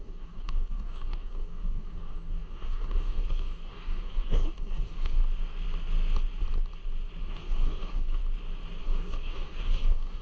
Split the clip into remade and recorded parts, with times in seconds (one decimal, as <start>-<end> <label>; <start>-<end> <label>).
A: 0.0-5.2 remade; 5.2-7.2 recorded; 7.2-8.2 remade; 8.2-8.8 recorded; 8.8-10.2 remade